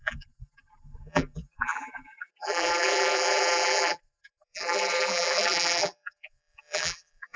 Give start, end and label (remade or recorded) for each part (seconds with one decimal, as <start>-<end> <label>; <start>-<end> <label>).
0.0-7.4 remade